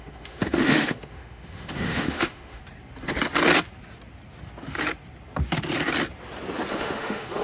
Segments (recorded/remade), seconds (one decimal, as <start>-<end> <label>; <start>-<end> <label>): 0.0-2.6 remade; 2.6-6.7 recorded; 6.7-7.4 remade

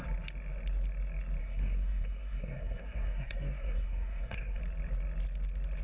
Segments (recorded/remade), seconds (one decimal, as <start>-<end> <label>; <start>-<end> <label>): 0.0-1.4 recorded; 1.4-4.6 remade; 4.6-5.8 recorded

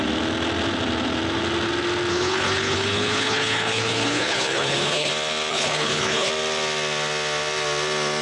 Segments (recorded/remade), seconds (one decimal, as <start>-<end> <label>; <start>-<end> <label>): 0.0-2.1 recorded; 2.1-5.1 remade; 5.1-5.5 recorded; 5.5-6.3 remade; 6.3-8.2 recorded

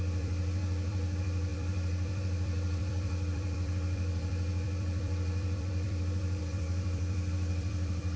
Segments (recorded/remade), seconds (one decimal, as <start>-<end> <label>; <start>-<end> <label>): 0.0-8.2 remade

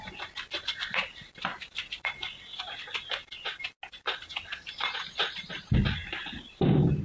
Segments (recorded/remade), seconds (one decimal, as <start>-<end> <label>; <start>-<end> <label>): 0.0-6.0 recorded; 6.0-7.0 remade

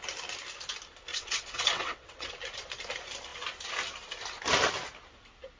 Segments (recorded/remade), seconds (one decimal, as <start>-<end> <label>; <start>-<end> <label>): 0.0-1.1 recorded; 1.1-2.3 remade; 2.3-5.6 recorded

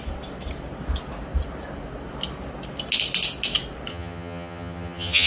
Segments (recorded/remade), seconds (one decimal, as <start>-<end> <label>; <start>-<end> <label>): 0.0-3.9 recorded; 3.9-5.3 remade

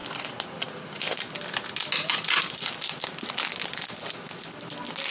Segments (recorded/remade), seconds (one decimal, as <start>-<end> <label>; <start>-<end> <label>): 0.0-5.1 recorded